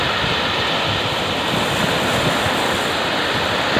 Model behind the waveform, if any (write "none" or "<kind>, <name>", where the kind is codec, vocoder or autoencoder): none